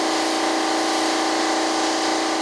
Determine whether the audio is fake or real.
real